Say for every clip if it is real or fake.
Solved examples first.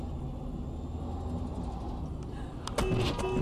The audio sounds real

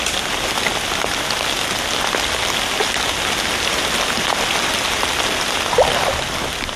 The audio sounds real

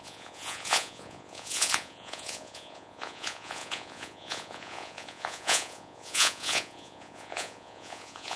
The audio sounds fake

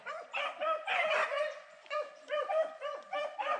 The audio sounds fake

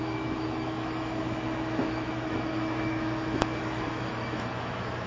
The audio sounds fake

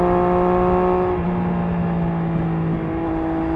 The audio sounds real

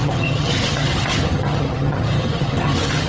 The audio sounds fake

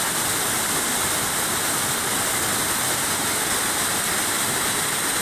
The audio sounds real